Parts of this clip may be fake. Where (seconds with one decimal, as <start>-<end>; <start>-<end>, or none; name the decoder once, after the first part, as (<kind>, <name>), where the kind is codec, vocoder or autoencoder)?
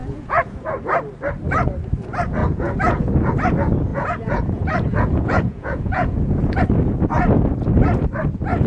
0.0-0.7 (vocoder, Vocos); 2.4-3.1; 3.9-6.6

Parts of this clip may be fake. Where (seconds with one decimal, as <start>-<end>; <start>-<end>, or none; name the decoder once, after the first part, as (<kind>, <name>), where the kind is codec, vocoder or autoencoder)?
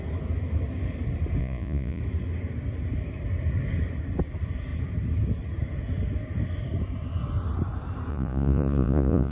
1.4-2.0 (vocoder, Vocos); 8.1-9.3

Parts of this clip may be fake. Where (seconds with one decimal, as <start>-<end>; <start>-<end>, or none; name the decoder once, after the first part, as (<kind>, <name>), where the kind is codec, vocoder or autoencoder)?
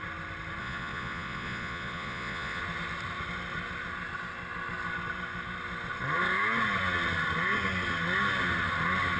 0.6-2.6 (vocoder, Vocos)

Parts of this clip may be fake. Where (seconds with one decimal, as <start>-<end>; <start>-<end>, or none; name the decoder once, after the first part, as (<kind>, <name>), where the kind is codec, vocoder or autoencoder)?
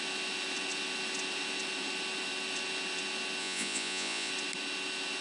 3.4-4.3 (vocoder, Vocos)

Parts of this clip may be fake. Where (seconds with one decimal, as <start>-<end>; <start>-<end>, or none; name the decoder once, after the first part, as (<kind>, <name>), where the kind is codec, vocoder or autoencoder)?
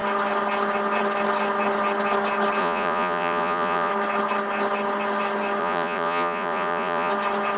2.6-3.9 (vocoder, Vocos); 5.6-7.1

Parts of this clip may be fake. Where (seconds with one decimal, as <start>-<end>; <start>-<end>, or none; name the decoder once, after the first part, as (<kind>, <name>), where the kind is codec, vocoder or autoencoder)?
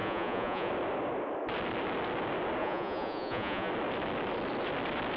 0.0-0.7 (vocoder, Vocos); 2.6-3.7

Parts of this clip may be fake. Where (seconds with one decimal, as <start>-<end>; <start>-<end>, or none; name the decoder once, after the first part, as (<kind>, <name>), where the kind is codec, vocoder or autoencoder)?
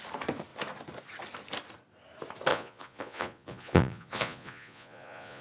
2.5-5.4 (vocoder, Vocos)